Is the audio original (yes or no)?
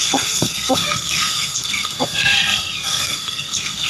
no